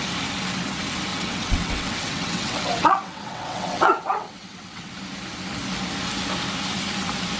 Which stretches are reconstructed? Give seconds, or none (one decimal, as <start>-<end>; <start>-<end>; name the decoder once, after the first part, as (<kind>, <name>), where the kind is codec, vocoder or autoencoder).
1.1-4.9 (vocoder, WaveNeXt)